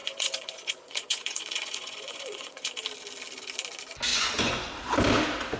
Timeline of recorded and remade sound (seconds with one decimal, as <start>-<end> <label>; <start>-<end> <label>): 0.0-2.7 remade; 2.7-4.1 recorded; 4.1-4.7 remade; 4.7-5.6 recorded